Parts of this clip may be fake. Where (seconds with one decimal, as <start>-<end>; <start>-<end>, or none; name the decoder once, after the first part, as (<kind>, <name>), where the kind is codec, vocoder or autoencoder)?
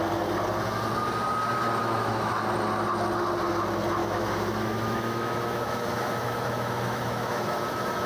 1.8-2.3 (autoencoder, DAC-VAE); 4.0-8.1